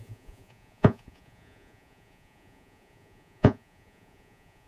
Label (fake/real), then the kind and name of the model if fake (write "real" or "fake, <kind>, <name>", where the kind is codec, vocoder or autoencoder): fake, vocoder, Vocos